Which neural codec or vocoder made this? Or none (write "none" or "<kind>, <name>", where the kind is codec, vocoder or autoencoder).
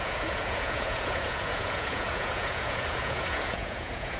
vocoder, Vocos